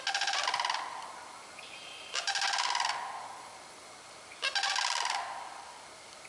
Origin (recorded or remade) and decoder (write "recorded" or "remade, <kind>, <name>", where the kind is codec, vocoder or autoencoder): recorded